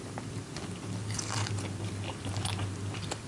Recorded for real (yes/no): yes